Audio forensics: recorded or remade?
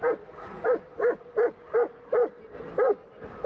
recorded